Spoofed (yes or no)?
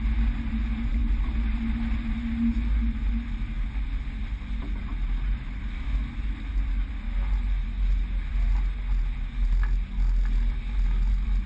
no